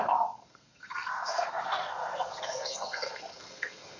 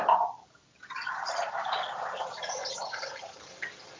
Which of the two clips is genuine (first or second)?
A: second